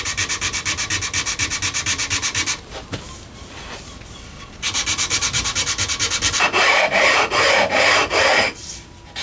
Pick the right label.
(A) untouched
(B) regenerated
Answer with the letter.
B